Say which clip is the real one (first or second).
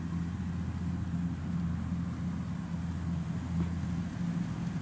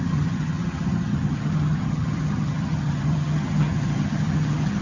first